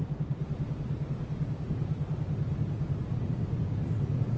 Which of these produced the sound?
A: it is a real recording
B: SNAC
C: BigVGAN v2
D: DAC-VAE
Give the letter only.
A